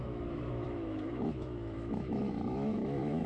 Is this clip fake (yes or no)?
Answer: yes